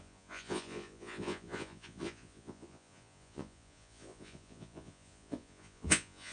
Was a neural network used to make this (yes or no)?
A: yes